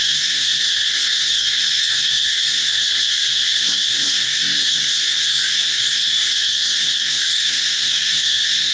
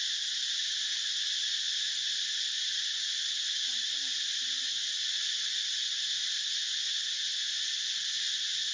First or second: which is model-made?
first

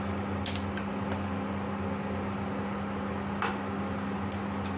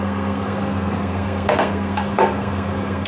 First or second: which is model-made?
second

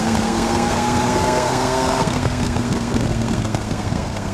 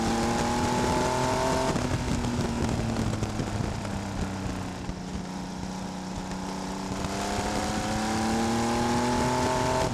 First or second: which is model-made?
first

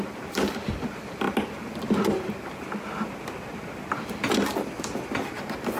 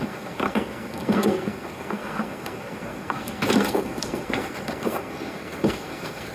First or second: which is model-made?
second